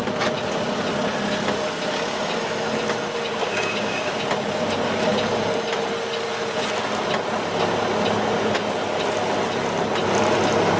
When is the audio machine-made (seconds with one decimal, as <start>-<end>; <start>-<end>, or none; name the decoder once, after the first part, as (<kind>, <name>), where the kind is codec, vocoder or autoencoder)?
3.4-4.2 (codec, DAC)